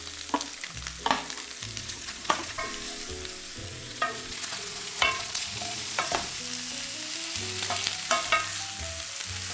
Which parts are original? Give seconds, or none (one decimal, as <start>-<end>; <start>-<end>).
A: 0.0-1.8; 2.7-3.6; 6.4-9.5